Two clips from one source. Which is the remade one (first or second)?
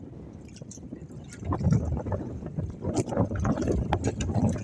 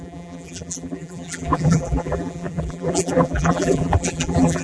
second